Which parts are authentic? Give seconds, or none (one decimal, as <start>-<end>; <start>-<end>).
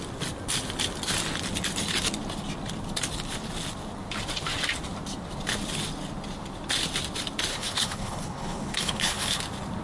0.0-7.5; 9.4-9.8